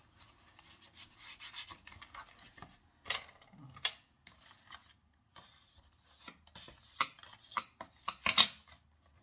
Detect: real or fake real